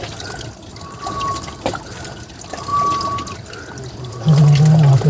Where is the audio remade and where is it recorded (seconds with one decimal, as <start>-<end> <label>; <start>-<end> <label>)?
0.0-5.1 recorded